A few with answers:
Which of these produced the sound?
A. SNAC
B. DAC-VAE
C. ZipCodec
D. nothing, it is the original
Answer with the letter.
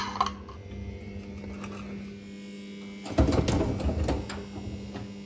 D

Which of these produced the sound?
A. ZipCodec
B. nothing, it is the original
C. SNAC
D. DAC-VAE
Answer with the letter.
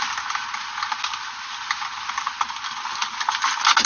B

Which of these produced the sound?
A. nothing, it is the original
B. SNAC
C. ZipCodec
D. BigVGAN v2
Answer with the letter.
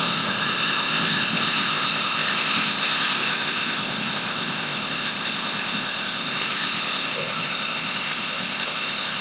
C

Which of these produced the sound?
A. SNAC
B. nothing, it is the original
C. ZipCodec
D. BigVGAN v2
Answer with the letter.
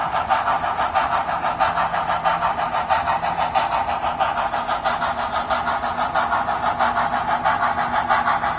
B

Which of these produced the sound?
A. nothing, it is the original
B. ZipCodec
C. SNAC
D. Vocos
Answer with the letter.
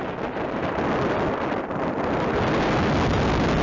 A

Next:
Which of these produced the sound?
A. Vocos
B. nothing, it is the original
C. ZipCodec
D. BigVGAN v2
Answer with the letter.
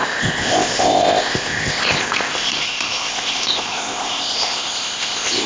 C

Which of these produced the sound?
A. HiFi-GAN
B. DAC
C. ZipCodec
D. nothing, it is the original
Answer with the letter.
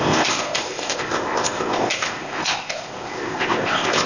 C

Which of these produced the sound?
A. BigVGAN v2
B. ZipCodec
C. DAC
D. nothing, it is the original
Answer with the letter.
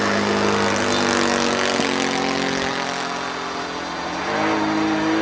D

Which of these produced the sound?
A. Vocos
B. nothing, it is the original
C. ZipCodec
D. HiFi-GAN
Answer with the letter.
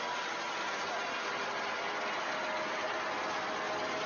B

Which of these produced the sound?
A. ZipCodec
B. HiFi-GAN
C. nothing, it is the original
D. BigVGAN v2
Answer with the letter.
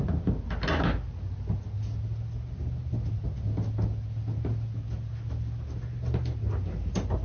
C